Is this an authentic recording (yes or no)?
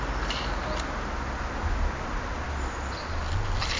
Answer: yes